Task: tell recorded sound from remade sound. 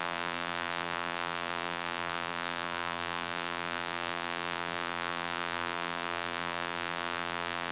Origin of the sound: remade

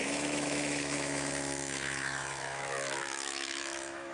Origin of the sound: remade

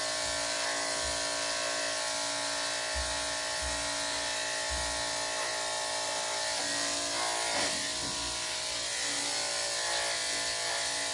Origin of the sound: recorded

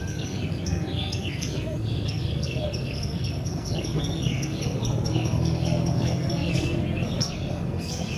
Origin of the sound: remade